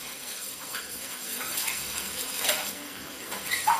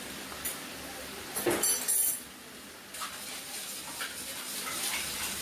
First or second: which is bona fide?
second